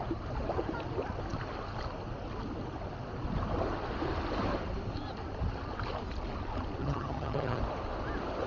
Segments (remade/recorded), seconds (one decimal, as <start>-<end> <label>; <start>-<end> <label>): 0.0-6.8 recorded; 6.8-7.6 remade; 7.6-8.5 recorded